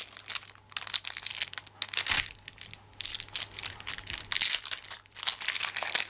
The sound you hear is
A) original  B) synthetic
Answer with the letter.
A